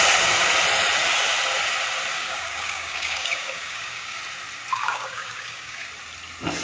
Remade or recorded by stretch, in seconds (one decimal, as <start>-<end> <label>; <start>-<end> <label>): 0.0-2.1 recorded; 2.1-4.2 remade; 4.2-4.7 recorded; 4.7-5.9 remade; 5.9-6.6 recorded